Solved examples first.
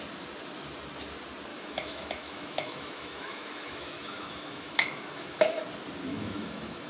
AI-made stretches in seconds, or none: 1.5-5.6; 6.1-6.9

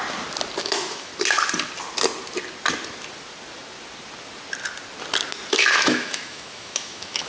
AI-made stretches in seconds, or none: 0.6-1.1; 5.5-7.3